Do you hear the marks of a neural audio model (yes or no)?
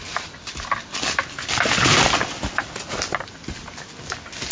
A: no